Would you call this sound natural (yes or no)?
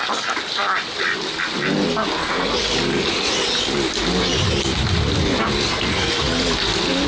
yes